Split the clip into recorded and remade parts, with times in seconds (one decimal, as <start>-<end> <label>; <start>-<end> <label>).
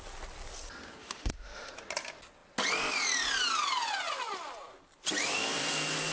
0.0-1.0 recorded; 1.0-1.7 remade; 1.7-6.1 recorded